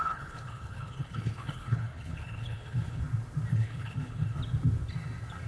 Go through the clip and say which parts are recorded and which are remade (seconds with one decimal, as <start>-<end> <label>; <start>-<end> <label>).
0.0-3.0 remade; 3.0-3.5 recorded; 3.5-4.4 remade; 4.4-5.5 recorded